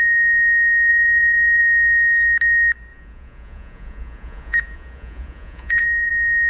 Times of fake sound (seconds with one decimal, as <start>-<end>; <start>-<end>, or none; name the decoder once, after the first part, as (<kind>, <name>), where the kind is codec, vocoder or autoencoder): 0.9-1.6 (vocoder, Vocos); 2.9-6.1